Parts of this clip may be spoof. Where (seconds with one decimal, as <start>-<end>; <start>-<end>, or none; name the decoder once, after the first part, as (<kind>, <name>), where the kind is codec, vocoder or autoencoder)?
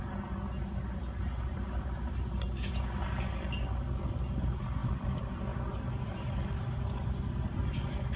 4.8-8.2 (vocoder, BigVGAN v2)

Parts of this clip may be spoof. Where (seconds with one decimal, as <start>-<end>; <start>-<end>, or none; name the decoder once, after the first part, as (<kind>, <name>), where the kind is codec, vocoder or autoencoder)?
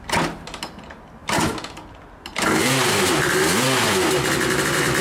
none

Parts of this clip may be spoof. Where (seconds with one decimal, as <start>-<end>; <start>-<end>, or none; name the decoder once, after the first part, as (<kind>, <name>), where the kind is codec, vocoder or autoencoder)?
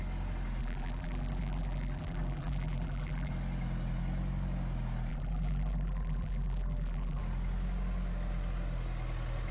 0.6-3.3 (vocoder, BigVGAN v2); 5.1-7.2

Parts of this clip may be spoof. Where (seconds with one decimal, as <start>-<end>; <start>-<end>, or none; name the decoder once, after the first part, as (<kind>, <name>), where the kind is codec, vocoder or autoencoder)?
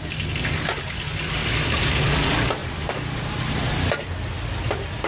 1.4-2.2 (vocoder, BigVGAN v2); 2.6-3.7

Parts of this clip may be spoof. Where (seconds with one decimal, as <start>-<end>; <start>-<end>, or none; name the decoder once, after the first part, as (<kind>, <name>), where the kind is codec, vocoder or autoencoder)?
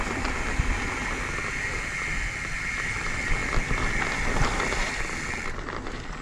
none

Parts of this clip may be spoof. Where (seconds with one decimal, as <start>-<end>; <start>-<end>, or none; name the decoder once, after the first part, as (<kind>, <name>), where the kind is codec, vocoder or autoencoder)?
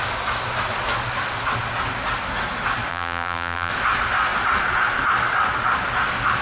2.9-3.7 (vocoder, BigVGAN v2)